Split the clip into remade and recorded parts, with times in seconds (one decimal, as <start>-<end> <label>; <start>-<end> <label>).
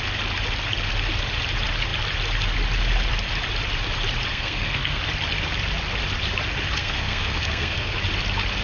0.0-4.3 recorded; 4.3-5.0 remade; 5.0-6.8 recorded; 6.8-8.0 remade; 8.0-8.6 recorded